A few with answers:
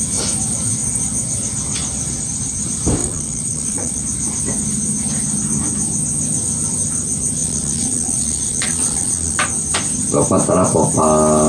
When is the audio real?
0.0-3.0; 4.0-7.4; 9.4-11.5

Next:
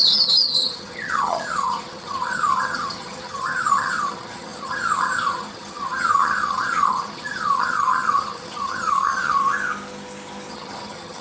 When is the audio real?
9.4-10.5

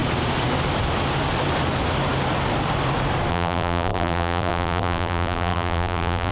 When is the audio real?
0.0-3.3

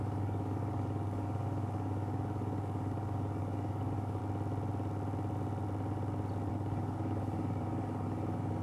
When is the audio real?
4.2-6.5